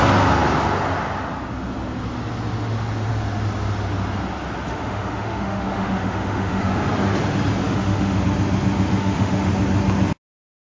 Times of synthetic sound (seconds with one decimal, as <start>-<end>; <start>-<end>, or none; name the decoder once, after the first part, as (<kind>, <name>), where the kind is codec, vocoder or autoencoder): 4.7-6.6 (autoencoder, DAC-VAE); 7.6-8.2; 9.0-9.5